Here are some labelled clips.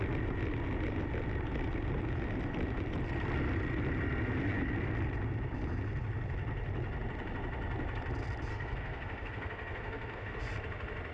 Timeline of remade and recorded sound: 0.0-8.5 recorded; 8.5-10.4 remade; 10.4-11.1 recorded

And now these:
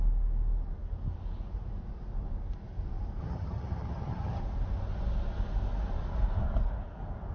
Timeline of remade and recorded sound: 0.0-3.2 recorded; 3.2-4.4 remade; 4.4-7.3 recorded

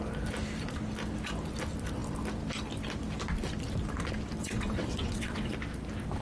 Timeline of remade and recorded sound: 0.0-4.4 recorded; 4.4-5.5 remade; 5.5-6.2 recorded

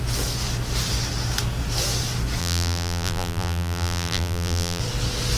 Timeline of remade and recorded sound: 0.0-2.4 recorded; 2.4-4.8 remade; 4.8-5.4 recorded